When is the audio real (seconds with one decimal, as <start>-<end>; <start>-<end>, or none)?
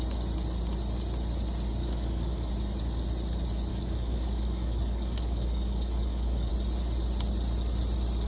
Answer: 0.0-1.8; 2.5-3.7; 6.5-8.3